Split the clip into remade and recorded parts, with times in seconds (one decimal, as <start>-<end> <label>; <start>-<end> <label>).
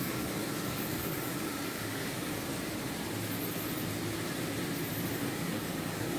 0.0-2.5 remade; 2.5-5.1 recorded; 5.1-6.2 remade